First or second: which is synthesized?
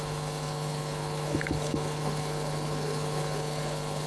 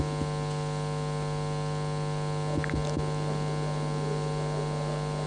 first